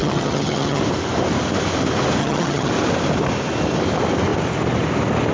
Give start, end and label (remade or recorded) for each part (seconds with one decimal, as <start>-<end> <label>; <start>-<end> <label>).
0.0-0.8 remade; 0.8-2.2 recorded; 2.2-2.7 remade; 2.7-5.3 recorded